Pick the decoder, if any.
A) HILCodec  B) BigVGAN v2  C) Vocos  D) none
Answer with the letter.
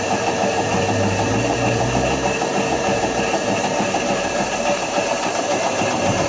B